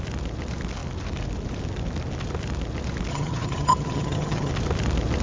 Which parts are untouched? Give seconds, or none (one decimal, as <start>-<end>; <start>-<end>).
0.0-3.1; 4.5-5.2